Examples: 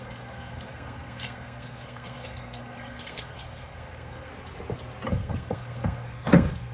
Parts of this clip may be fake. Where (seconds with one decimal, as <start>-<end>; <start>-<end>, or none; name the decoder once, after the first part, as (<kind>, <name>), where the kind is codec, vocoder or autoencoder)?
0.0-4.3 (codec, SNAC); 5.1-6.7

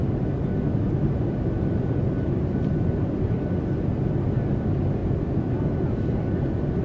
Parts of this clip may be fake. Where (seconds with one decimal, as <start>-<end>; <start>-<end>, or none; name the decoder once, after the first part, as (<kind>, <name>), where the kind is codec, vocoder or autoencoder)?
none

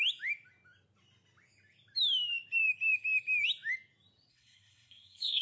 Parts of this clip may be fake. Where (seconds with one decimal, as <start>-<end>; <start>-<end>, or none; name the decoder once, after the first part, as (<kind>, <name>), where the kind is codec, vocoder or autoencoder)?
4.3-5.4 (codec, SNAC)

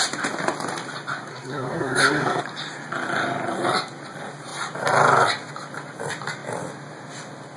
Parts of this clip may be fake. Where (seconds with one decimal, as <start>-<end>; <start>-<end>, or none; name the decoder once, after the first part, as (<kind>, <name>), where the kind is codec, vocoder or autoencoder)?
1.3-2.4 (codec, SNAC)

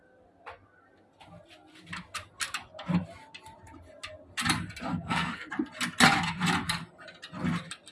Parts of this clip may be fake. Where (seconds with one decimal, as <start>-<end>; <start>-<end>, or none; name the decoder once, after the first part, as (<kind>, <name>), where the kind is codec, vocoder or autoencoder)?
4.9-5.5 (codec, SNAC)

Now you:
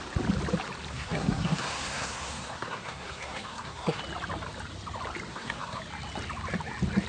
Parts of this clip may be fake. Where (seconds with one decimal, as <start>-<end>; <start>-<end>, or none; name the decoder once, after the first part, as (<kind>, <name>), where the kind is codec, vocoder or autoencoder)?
0.9-4.0 (codec, SNAC); 5.3-5.8

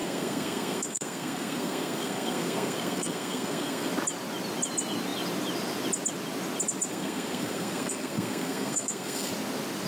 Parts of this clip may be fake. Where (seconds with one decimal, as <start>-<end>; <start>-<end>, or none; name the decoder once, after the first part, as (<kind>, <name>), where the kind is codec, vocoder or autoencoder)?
0.0-3.9 (codec, SNAC); 6.9-9.3

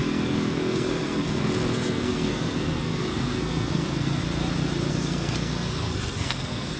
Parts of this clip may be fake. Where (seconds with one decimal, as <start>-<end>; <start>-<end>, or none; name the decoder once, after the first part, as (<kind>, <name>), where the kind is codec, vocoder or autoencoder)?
0.0-4.2 (codec, SNAC); 4.9-6.8